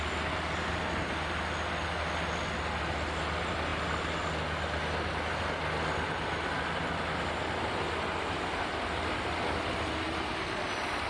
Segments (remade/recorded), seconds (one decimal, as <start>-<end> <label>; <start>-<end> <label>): 0.0-11.1 recorded